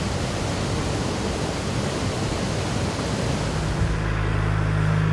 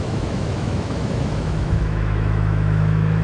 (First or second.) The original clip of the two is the first